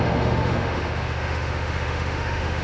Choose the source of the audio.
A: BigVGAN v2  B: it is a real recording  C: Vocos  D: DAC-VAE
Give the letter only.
D